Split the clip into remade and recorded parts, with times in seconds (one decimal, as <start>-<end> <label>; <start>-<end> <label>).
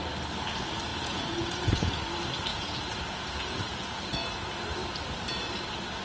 0.0-0.9 recorded; 0.9-1.9 remade; 1.9-2.5 recorded; 2.5-4.3 remade; 4.3-6.0 recorded